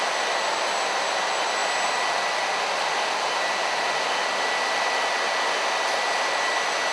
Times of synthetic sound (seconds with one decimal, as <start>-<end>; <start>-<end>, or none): none